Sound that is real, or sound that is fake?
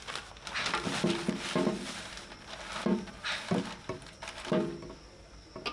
real